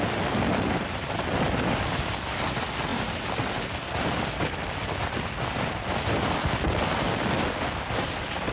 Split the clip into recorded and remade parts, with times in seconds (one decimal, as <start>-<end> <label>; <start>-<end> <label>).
0.0-8.5 recorded